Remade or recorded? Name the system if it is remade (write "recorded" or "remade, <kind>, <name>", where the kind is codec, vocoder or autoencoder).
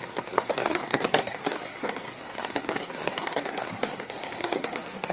remade, codec, SNAC